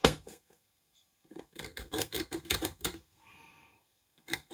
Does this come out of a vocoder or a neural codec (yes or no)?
yes